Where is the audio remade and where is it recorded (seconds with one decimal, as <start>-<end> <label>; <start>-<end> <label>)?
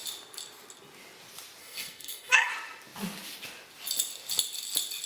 0.0-1.6 recorded; 1.6-2.5 remade; 2.5-5.1 recorded